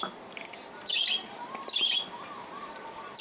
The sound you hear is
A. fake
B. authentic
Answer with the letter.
A